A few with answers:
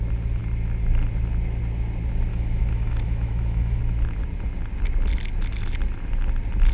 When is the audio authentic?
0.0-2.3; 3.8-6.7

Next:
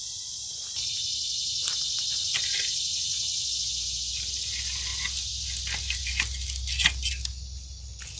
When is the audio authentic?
0.0-3.1; 4.1-8.2

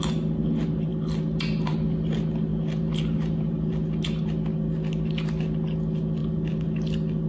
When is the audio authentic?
0.0-2.5; 3.7-7.3

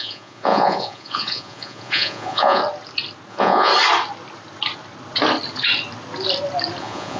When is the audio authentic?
2.6-3.3; 3.7-6.8

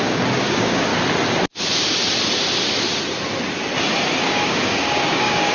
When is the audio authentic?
0.9-4.2

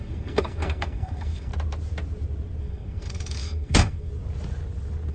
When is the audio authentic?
1.5-2.6; 4.1-5.1

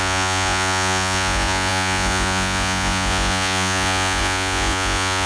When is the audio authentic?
none

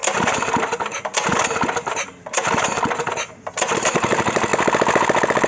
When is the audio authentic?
0.0-5.5